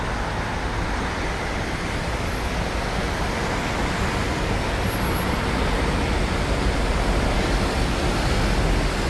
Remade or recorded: recorded